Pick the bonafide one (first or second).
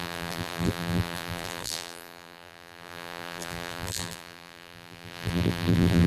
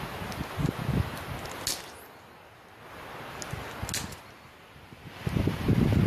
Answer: second